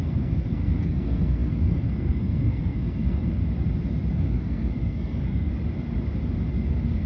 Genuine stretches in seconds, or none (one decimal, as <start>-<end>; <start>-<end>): 3.4-4.1; 5.5-6.5